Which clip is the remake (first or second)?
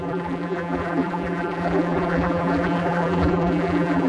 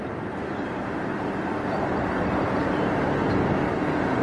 first